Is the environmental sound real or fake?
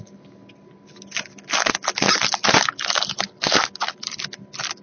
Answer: real